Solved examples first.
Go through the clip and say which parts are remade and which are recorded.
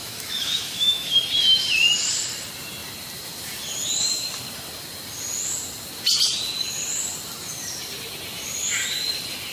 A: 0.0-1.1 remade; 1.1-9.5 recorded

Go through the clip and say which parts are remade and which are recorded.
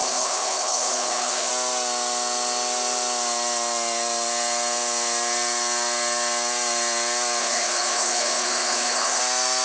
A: 0.0-1.5 remade; 1.5-7.4 recorded; 7.4-9.2 remade; 9.2-9.6 recorded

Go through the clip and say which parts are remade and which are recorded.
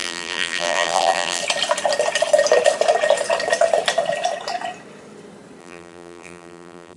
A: 0.0-1.4 remade; 1.4-5.6 recorded; 5.6-7.0 remade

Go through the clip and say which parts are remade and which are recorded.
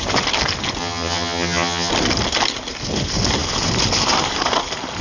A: 0.0-0.8 recorded; 0.8-1.9 remade; 1.9-5.0 recorded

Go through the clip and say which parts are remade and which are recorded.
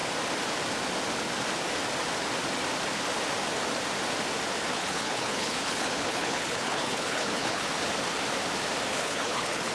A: 0.0-4.7 recorded; 4.7-7.7 remade; 7.7-8.9 recorded; 8.9-9.7 remade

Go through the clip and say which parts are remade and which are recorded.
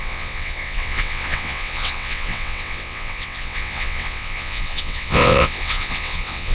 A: 0.0-6.5 remade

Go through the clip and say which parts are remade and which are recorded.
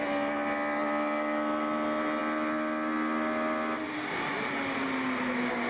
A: 0.0-5.7 recorded